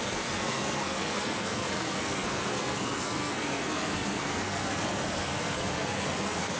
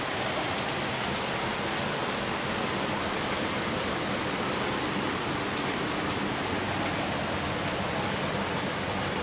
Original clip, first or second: second